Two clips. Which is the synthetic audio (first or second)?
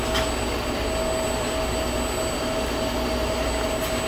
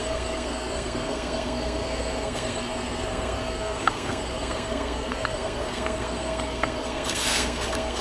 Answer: second